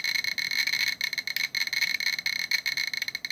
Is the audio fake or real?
real